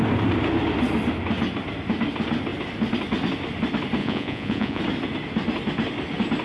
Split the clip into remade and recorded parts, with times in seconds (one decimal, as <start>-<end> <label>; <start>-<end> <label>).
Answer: 0.0-4.0 recorded; 4.0-4.8 remade; 4.8-6.4 recorded